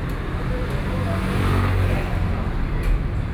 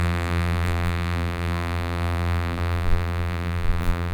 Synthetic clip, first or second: second